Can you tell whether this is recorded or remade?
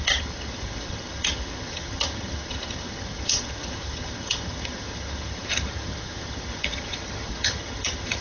remade